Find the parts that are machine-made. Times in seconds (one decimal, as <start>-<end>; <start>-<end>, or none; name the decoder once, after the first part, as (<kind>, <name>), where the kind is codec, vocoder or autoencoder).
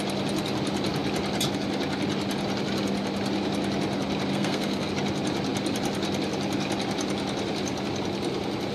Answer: 4.3-4.9 (codec, SNAC)